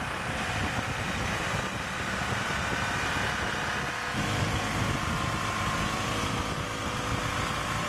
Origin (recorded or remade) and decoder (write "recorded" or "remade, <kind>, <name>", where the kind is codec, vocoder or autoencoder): recorded